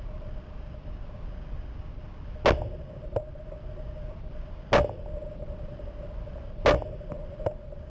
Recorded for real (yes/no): yes